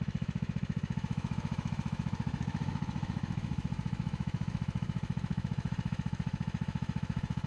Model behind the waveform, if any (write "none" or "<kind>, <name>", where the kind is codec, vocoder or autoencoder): autoencoder, DAC-VAE